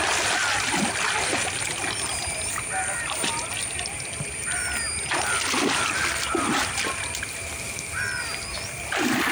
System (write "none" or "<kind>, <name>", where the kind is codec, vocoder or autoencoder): none